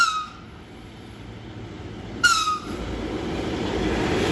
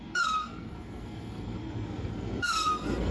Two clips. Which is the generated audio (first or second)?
second